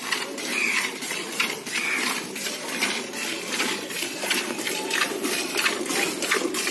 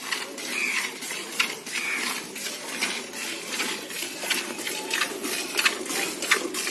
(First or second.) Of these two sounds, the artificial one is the first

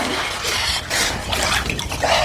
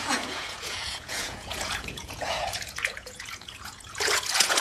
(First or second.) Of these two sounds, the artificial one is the second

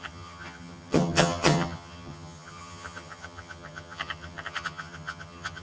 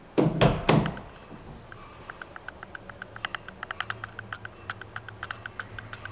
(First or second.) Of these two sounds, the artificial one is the first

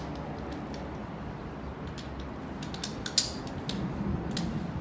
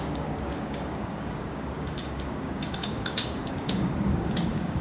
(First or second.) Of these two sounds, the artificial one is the second